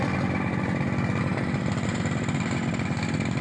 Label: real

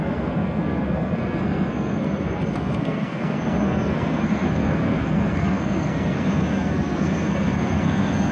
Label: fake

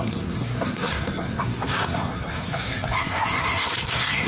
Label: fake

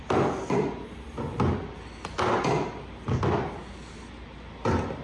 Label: real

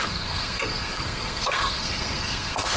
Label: fake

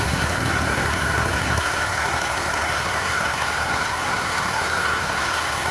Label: fake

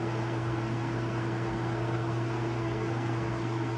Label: fake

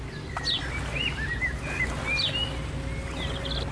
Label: real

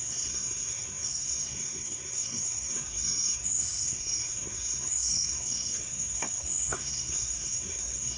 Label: fake